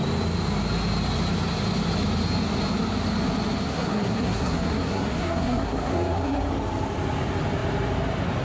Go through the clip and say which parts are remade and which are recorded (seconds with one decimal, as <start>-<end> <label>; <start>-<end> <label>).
0.0-3.7 recorded; 3.7-6.5 remade; 6.5-8.4 recorded